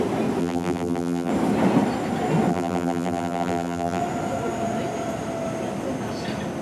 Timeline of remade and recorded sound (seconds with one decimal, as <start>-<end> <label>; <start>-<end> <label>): 0.0-0.4 recorded; 0.4-1.3 remade; 1.3-2.5 recorded; 2.5-4.0 remade; 4.0-6.6 recorded